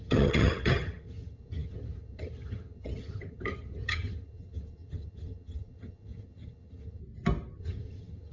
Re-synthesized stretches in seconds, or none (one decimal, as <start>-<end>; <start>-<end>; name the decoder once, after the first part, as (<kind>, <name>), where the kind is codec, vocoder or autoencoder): 0.0-7.0 (vocoder, HiFi-GAN); 7.6-8.3